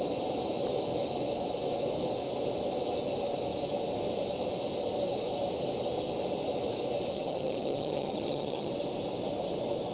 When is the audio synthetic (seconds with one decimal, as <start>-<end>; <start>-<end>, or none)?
7.1-8.7

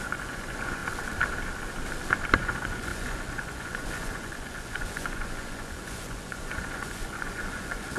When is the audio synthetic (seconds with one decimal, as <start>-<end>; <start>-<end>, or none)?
0.0-0.8; 2.4-8.0

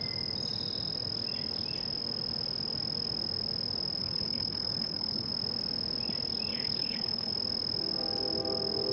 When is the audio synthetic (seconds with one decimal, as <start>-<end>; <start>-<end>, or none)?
4.0-5.3; 6.5-7.3

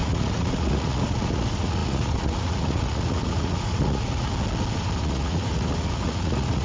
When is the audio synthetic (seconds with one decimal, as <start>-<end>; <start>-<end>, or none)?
0.0-4.3; 5.0-6.6

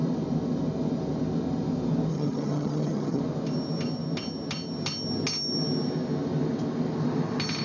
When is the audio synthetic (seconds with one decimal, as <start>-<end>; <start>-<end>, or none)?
2.1-3.2